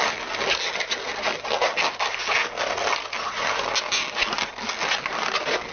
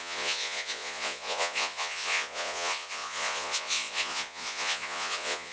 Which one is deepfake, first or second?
second